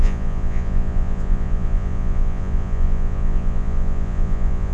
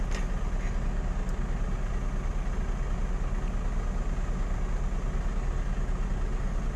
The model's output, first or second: first